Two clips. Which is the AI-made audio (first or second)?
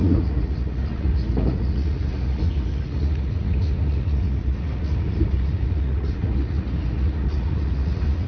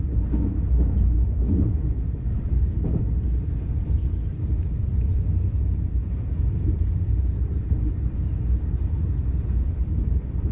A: first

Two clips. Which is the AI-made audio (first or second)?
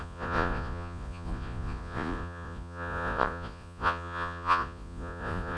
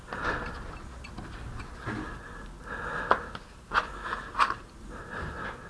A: first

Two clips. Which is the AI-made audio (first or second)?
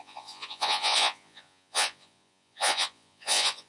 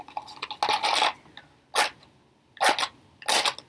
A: first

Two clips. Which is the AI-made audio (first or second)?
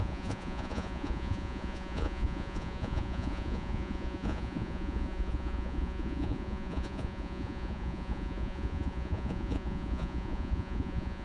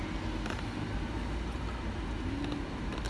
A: first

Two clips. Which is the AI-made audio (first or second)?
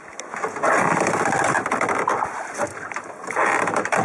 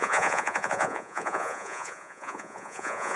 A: second